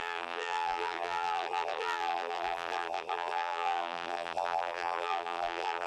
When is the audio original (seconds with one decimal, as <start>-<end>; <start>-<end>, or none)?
none

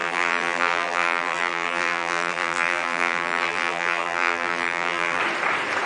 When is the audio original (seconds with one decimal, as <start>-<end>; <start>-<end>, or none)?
5.2-5.9

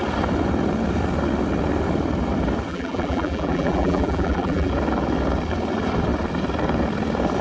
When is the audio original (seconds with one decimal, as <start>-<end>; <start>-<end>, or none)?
0.0-2.7; 4.7-7.4